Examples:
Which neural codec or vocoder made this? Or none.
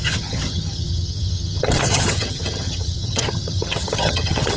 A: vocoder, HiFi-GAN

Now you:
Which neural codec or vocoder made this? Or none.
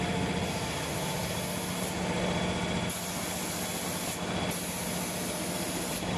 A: none